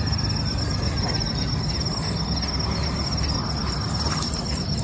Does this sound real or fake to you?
real